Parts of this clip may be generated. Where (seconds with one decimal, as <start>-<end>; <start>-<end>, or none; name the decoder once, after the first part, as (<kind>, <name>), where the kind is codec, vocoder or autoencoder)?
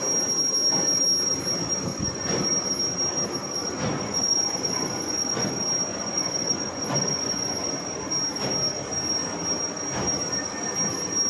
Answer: 1.9-2.4 (vocoder, Vocos); 3.6-5.5; 5.9-7.7